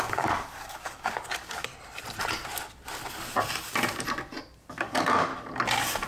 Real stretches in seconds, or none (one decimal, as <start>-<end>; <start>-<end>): 1.7-4.7; 5.3-6.1